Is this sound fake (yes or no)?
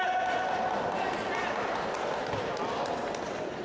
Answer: no